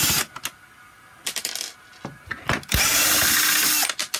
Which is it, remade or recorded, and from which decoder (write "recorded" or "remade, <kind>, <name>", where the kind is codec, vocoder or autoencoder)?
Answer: recorded